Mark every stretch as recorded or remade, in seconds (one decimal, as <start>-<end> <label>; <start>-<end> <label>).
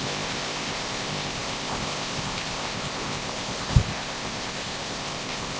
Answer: 0.0-5.6 remade